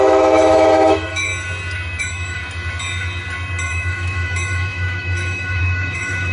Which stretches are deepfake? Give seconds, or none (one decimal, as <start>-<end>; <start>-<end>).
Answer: 0.0-1.3; 2.0-2.4; 3.6-6.3